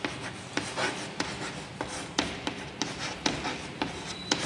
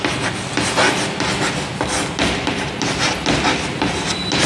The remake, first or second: first